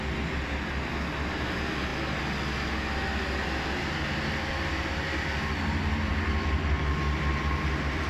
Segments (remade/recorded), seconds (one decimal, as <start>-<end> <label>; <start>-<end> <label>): 0.0-8.1 recorded

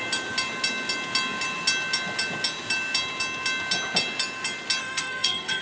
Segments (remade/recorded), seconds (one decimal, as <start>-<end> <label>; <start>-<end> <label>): 0.0-4.8 recorded; 4.8-5.6 remade

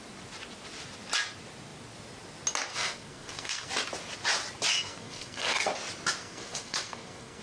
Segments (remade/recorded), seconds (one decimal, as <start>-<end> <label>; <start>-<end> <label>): 0.0-2.7 recorded; 2.7-3.7 remade; 3.7-4.7 recorded; 4.7-5.7 remade; 5.7-6.2 recorded; 6.2-7.4 remade